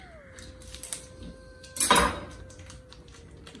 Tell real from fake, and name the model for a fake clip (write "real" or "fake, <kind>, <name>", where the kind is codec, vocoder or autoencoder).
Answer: real